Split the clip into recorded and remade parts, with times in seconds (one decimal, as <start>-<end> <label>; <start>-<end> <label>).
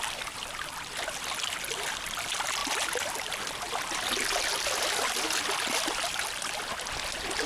0.0-7.5 recorded